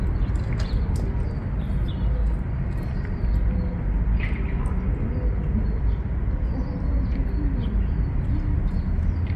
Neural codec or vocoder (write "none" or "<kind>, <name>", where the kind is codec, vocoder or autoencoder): none